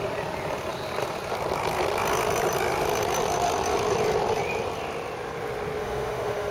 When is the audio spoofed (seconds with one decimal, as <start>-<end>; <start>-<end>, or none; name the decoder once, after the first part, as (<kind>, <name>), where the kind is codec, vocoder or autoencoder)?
5.8-6.5 (autoencoder, DAC-VAE)

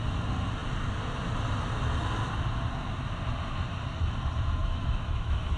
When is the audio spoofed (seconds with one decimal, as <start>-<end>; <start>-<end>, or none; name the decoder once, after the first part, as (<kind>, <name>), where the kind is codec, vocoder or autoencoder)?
4.6-5.6 (autoencoder, DAC-VAE)

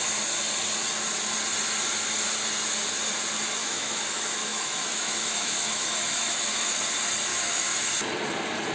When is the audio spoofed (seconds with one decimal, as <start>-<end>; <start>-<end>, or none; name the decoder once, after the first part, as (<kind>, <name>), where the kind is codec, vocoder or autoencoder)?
3.6-6.8 (autoencoder, DAC-VAE); 7.3-7.9

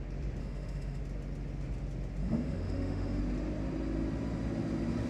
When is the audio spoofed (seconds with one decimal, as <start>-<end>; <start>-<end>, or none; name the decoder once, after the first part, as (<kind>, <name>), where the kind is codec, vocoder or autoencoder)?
0.4-1.0 (autoencoder, DAC-VAE); 2.2-3.2

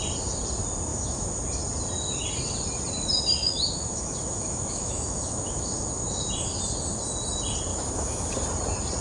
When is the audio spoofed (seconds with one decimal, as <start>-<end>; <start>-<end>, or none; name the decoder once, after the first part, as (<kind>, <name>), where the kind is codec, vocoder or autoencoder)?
0.9-1.4 (autoencoder, DAC-VAE); 3.4-6.2; 7.7-8.3

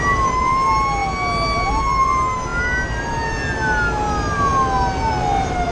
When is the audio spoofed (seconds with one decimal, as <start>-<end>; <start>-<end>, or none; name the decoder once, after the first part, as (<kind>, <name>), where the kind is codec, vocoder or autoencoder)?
none

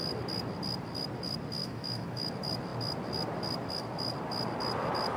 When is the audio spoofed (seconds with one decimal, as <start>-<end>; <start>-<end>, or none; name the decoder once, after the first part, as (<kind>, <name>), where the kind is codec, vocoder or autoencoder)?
1.6-2.3 (autoencoder, DAC-VAE)

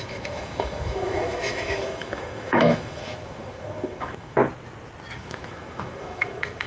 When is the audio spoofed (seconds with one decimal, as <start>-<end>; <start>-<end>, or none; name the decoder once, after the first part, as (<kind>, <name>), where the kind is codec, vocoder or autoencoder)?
0.0-4.4 (autoencoder, DAC-VAE); 5.1-6.7